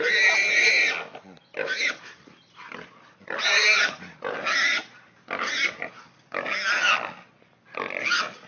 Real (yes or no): yes